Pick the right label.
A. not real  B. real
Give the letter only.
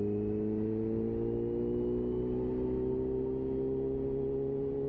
B